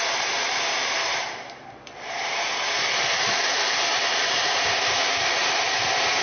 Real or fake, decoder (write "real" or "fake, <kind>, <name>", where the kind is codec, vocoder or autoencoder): fake, vocoder, BigVGAN v2